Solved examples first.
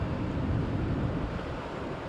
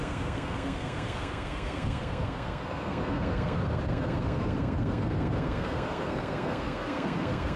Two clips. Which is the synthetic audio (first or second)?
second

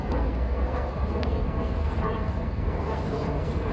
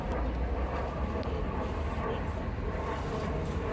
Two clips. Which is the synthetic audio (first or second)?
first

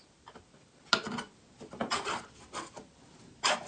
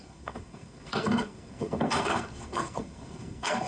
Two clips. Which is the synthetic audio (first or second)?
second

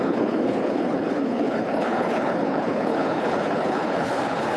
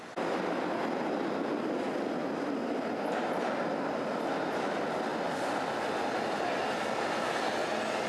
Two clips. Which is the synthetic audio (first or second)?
first